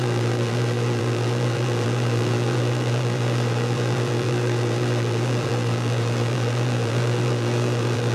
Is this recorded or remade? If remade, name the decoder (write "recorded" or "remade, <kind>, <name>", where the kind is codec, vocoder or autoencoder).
remade, vocoder, BigVGAN v2